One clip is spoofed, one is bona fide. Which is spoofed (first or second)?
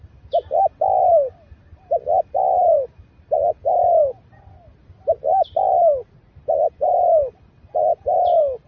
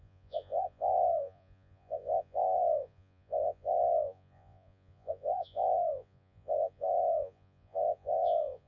second